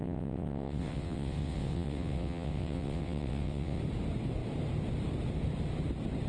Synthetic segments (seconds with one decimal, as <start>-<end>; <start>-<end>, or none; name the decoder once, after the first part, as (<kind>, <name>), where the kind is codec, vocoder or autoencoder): 0.0-3.8 (vocoder, WaveNeXt)